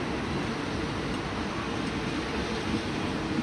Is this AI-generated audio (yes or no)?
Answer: no